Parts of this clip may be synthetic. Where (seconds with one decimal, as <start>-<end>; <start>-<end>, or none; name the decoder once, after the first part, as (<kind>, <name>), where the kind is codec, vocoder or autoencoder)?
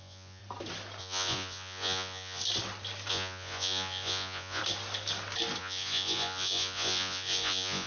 0.0-0.4 (vocoder, Vocos); 1.0-2.4; 3.1-4.6; 5.6-7.9